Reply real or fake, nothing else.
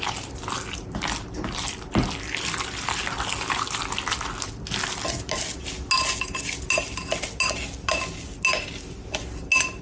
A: real